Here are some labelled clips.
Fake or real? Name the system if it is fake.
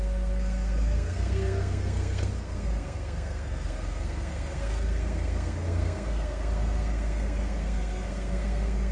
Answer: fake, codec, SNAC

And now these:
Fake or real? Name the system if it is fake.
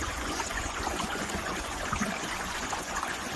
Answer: fake, vocoder, Vocos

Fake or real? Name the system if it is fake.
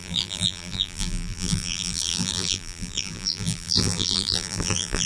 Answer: fake, vocoder, BigVGAN v2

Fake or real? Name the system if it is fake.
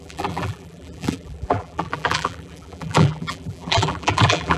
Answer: fake, vocoder, BigVGAN v2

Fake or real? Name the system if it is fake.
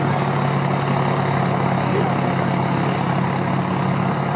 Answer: real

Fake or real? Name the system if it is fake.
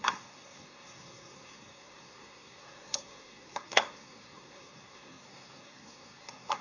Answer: fake, codec, SNAC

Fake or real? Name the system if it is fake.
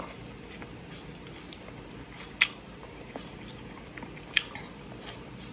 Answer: real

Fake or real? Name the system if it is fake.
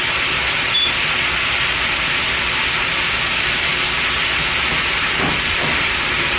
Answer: real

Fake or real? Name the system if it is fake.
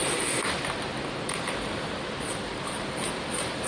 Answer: real